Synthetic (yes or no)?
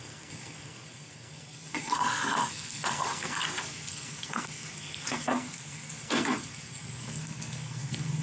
yes